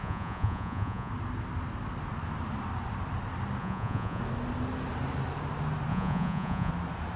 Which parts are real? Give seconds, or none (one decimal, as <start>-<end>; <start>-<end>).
1.1-3.6; 4.2-5.9; 6.7-7.2